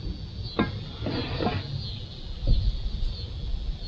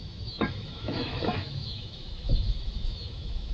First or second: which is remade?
second